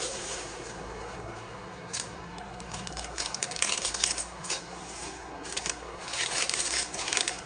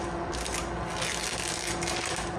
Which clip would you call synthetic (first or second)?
first